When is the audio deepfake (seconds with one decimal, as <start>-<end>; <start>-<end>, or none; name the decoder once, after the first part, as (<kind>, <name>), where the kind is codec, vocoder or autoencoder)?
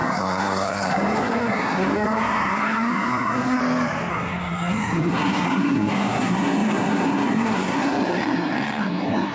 0.0-3.6 (codec, SNAC); 4.1-9.3